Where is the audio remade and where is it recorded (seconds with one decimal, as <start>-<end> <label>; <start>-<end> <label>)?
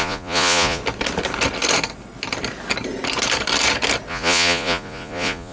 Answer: 0.0-0.8 remade; 0.8-4.1 recorded; 4.1-5.5 remade